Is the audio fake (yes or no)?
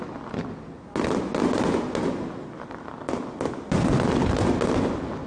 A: no